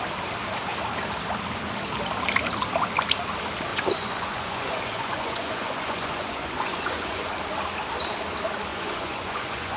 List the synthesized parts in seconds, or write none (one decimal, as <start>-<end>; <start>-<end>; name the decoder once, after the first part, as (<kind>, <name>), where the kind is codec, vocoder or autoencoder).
3.7-7.3 (vocoder, Vocos); 8.7-9.8